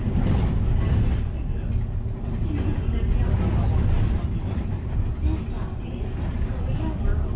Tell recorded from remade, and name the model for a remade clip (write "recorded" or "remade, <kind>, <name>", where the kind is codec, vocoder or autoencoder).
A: recorded